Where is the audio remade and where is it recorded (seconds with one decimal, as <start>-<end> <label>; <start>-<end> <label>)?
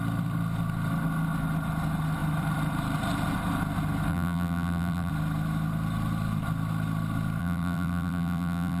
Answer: 0.0-4.1 recorded; 4.1-5.1 remade; 5.1-7.4 recorded; 7.4-8.8 remade